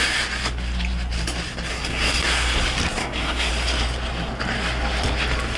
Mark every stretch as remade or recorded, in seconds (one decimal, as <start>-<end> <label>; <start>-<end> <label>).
0.0-1.7 recorded; 1.7-2.2 remade; 2.2-3.0 recorded; 3.0-3.5 remade; 3.5-5.6 recorded